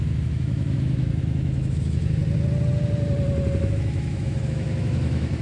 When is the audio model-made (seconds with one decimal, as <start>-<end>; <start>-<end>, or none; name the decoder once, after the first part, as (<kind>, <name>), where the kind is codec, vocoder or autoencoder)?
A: 0.0-2.2 (autoencoder, DAC-VAE); 3.6-5.4